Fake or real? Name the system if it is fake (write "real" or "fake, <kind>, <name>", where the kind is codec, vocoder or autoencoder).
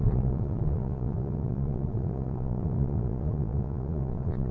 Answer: fake, vocoder, Vocos